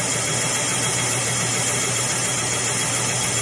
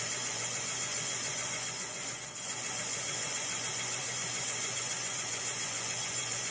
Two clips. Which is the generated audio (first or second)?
second